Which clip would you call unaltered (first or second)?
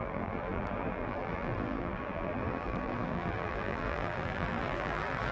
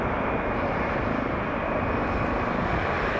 second